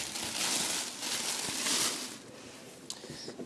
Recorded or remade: recorded